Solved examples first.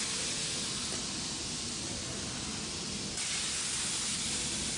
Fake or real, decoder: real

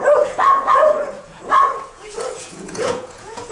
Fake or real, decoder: fake, vocoder, Vocos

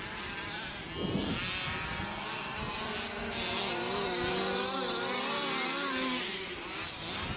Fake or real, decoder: real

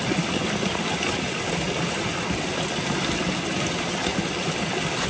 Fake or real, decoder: real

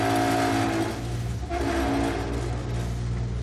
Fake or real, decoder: real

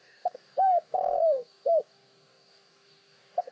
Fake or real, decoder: fake, codec, DAC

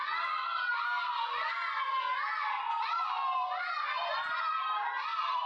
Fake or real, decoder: real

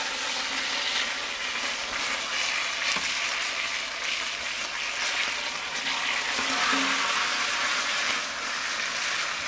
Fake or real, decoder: real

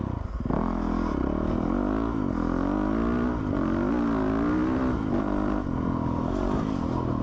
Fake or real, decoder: real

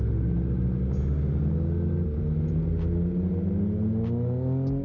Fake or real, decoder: real